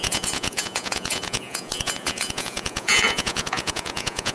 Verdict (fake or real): fake